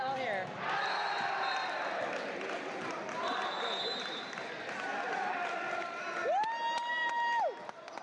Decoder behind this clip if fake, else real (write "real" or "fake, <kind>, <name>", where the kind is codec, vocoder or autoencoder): real